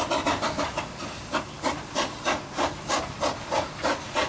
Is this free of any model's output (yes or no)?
yes